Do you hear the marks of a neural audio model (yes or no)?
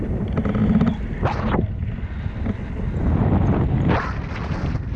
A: no